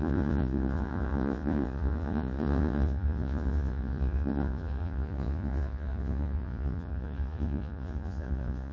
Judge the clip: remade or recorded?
remade